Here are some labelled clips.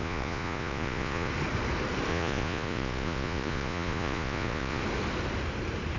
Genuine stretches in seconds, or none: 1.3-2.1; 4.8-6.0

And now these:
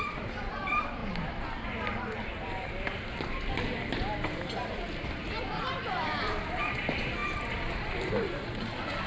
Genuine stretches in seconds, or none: 1.0-2.2

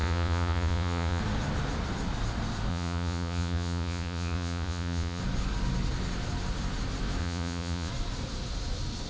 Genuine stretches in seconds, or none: 1.2-2.7; 5.2-7.2; 7.9-9.1

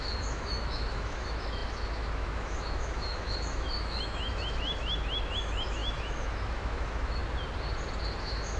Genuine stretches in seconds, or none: 7.2-8.2

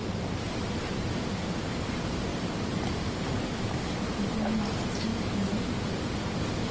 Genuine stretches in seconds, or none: 1.9-2.3; 3.2-6.7